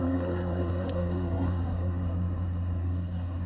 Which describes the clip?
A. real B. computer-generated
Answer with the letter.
B